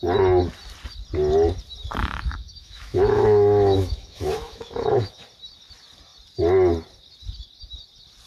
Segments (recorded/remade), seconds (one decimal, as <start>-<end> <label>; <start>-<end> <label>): 0.0-2.0 recorded; 2.0-5.2 remade; 5.2-8.3 recorded